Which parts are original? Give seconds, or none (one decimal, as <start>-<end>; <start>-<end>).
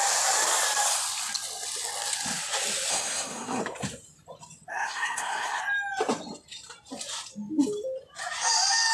0.0-2.9; 3.6-4.7; 5.6-8.9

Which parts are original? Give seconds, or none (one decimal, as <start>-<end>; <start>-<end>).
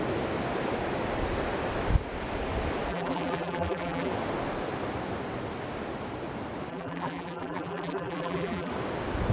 0.0-2.9; 4.1-6.7; 8.7-9.3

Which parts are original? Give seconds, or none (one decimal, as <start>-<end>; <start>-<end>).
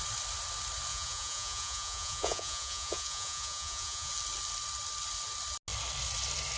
0.0-0.9; 4.1-6.6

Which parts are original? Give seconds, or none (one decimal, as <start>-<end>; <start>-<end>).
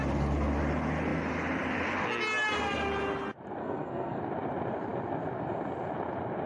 0.0-3.6; 4.2-6.5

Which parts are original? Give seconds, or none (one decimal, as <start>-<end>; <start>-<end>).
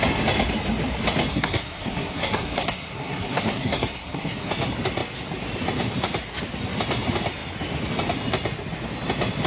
0.0-1.3; 4.5-9.5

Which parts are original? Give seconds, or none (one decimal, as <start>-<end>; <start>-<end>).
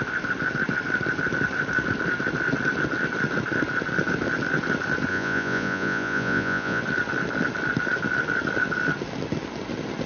0.0-5.1; 6.8-10.1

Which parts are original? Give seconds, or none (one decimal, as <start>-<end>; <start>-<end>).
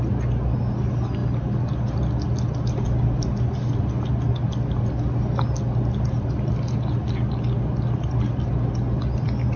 0.0-9.6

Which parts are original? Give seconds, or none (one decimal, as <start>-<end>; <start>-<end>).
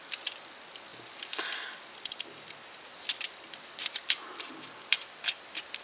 0.0-0.9; 4.4-5.8